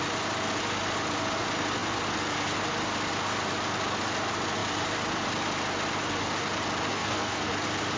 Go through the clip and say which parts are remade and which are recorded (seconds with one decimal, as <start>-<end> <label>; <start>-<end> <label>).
0.0-6.9 recorded; 6.9-7.5 remade; 7.5-8.0 recorded